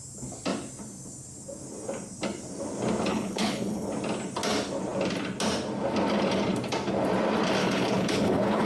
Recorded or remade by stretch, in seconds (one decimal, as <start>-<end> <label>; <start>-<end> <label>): 0.0-3.1 recorded; 3.1-3.9 remade; 3.9-7.6 recorded; 7.6-8.7 remade